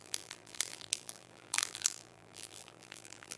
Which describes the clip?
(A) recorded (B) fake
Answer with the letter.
B